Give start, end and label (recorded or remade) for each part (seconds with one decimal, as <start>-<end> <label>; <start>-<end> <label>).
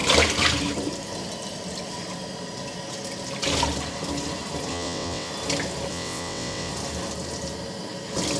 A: 0.0-4.7 recorded; 4.7-5.3 remade; 5.3-5.9 recorded; 5.9-6.7 remade; 6.7-8.4 recorded